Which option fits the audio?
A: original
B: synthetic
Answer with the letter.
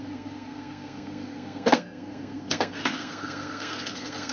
B